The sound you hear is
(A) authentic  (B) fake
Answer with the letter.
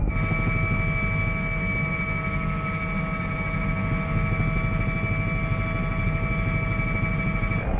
A